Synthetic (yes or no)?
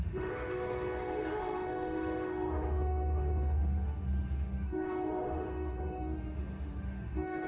yes